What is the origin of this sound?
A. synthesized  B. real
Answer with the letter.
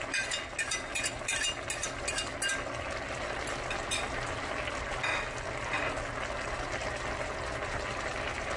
B